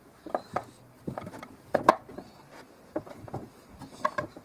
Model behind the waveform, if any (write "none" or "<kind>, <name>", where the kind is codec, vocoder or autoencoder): none